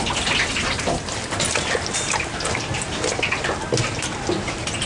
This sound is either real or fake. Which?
real